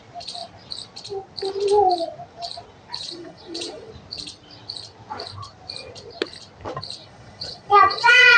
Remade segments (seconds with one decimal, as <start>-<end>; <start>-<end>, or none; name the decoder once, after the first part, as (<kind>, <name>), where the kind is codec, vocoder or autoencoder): 3.0-3.9 (vocoder, Vocos); 7.0-8.4